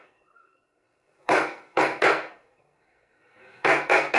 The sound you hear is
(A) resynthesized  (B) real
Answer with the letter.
A